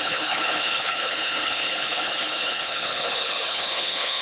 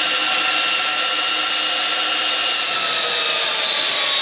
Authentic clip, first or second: second